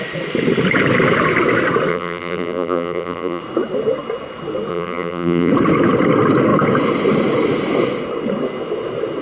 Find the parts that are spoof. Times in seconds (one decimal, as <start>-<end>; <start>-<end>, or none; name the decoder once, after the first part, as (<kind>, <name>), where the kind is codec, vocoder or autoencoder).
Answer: 1.9-3.4 (vocoder, BigVGAN v2); 4.7-5.5